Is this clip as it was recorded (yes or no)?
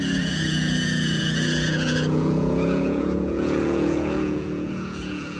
no